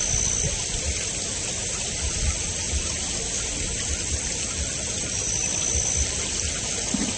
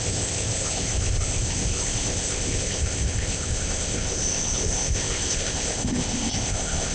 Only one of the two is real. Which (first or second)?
first